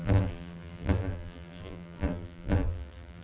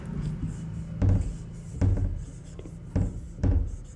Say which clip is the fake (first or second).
first